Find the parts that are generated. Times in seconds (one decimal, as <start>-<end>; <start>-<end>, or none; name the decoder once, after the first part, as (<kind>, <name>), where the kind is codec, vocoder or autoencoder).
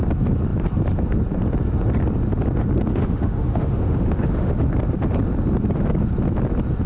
2.9-4.5 (autoencoder, DAC-VAE)